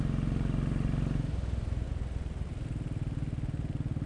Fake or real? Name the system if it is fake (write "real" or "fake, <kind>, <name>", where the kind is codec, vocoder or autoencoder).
real